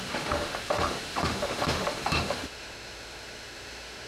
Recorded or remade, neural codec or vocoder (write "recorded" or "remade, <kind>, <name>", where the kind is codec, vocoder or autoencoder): remade, autoencoder, DAC-VAE